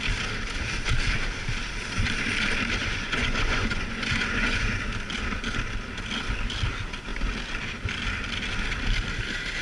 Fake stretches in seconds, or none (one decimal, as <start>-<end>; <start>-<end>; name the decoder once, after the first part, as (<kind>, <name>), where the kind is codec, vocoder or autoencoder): 2.8-4.8 (vocoder, Vocos)